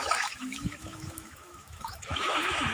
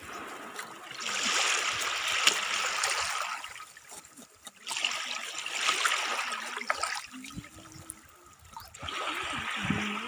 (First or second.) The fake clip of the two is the first